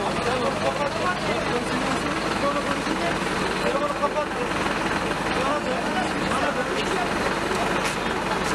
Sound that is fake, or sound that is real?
real